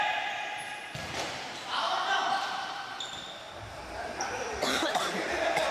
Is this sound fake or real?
fake